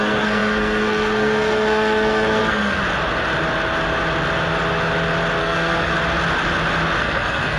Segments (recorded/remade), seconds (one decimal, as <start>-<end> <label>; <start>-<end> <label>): 0.0-2.8 remade; 2.8-5.4 recorded; 5.4-5.9 remade; 5.9-7.0 recorded; 7.0-7.6 remade